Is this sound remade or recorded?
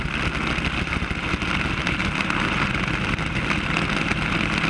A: recorded